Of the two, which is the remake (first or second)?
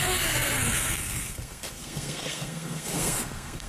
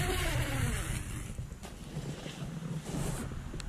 first